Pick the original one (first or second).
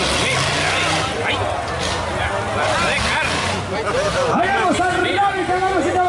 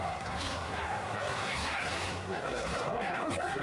first